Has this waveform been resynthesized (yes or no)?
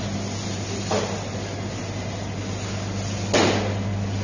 no